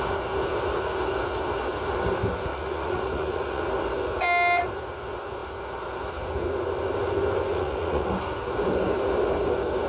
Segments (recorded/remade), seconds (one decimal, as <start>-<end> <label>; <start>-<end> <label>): 0.0-2.5 recorded; 2.5-3.6 remade; 3.6-7.5 recorded; 7.5-8.1 remade; 8.1-9.9 recorded